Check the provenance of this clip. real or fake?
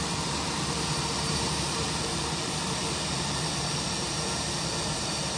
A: fake